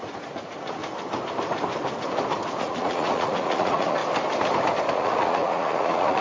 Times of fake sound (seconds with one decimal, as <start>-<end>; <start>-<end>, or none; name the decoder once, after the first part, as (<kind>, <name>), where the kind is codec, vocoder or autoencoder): 0.0-0.8 (vocoder, Vocos); 2.6-4.0; 4.9-6.2